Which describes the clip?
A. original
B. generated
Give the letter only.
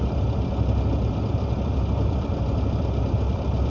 B